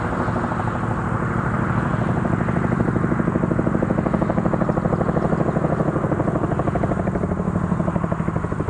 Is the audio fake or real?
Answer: real